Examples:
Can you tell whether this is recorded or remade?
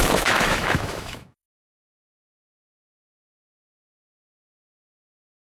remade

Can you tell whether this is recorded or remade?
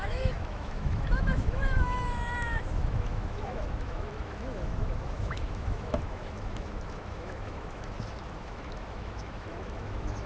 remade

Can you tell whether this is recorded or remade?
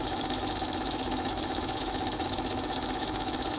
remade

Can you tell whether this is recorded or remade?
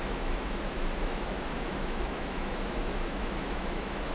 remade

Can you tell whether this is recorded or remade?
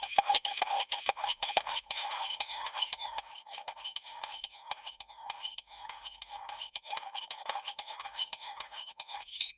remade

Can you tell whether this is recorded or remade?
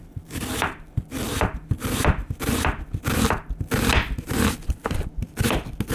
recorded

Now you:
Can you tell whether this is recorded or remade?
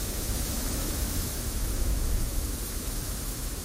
remade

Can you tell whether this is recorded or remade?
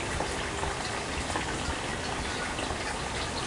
recorded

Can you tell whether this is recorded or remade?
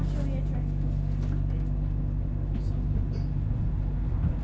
recorded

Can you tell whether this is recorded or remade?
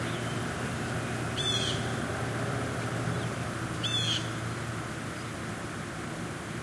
recorded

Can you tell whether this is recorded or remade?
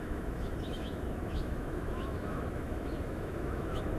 remade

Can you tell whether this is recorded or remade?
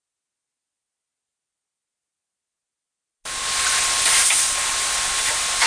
recorded